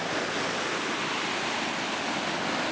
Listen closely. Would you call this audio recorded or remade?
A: recorded